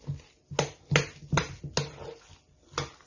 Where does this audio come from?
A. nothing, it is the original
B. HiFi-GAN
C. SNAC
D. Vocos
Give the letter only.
A